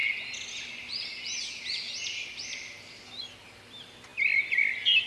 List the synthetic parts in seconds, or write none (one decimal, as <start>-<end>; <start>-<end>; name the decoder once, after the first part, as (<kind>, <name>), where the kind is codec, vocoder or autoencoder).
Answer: none